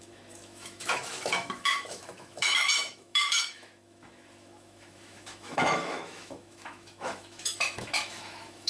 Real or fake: fake